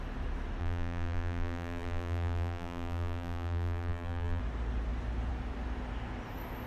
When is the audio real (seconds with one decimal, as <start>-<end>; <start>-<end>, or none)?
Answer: 0.0-0.6; 4.4-6.7